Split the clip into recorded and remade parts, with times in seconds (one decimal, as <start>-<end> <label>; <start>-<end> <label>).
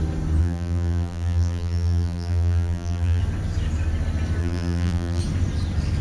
0.0-0.4 recorded; 0.4-3.2 remade; 3.2-4.4 recorded; 4.4-5.2 remade; 5.2-6.0 recorded